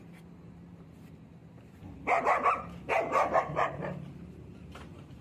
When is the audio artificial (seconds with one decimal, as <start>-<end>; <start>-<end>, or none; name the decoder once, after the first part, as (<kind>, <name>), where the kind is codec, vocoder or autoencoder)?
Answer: 0.0-5.2 (vocoder, BigVGAN v2)